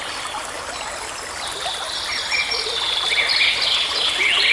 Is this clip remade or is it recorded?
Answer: recorded